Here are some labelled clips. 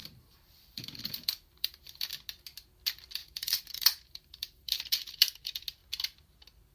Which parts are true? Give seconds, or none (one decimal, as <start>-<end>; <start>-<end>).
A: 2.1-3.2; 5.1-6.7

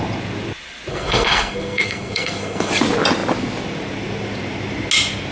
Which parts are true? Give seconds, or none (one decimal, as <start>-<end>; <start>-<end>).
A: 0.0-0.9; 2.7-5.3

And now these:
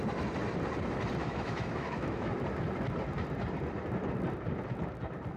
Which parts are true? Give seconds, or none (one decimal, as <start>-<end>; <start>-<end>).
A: 0.0-1.2; 2.3-5.4

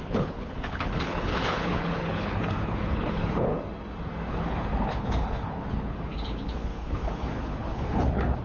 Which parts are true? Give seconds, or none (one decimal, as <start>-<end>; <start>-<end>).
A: 3.5-4.3

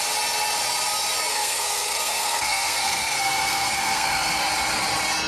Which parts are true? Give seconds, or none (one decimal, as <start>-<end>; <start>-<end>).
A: 0.0-1.3; 4.4-5.3

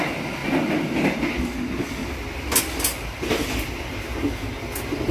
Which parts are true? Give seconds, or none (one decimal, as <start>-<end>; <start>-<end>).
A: 0.0-5.1

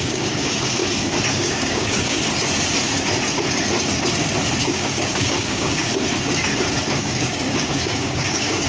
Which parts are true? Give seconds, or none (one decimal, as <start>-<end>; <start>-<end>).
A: 0.8-1.3; 2.2-4.6; 5.9-7.0

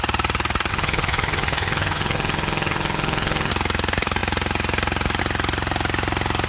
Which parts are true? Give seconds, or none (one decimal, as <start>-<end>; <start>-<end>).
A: 0.0-0.7; 3.5-6.5